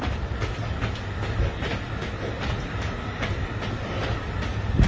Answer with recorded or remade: recorded